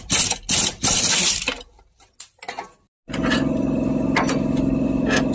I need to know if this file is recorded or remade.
recorded